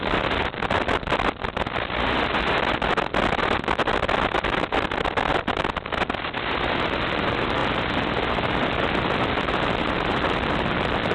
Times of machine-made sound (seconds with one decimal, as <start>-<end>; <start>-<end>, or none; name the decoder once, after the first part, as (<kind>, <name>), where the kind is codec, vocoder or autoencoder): none